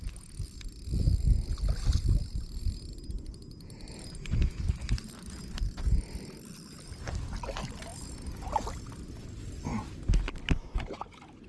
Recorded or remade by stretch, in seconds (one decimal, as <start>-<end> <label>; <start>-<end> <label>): 0.0-11.5 recorded